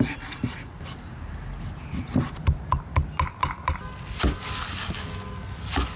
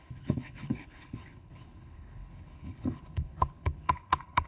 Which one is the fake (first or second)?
second